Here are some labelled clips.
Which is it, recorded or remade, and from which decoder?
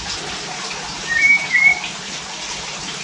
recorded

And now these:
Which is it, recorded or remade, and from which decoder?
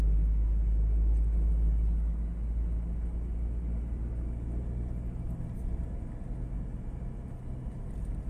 recorded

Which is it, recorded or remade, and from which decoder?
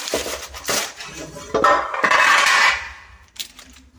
remade, vocoder, BigVGAN v2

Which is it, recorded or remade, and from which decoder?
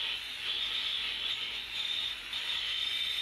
remade, vocoder, Vocos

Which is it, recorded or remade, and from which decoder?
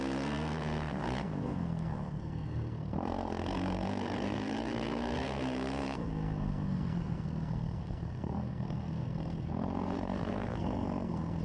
remade, codec, SNAC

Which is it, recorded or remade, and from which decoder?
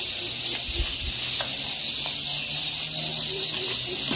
recorded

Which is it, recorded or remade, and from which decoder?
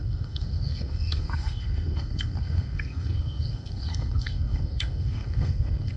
remade, codec, SNAC